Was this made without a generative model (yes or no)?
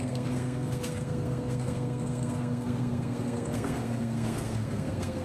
no